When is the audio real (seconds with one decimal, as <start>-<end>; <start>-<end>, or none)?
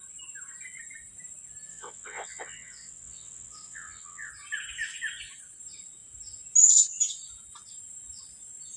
0.0-1.7; 4.3-8.8